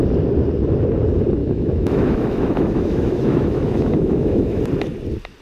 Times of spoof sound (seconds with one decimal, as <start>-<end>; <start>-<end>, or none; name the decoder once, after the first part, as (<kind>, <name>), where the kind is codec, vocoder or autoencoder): 1.4-4.6 (autoencoder, DAC-VAE)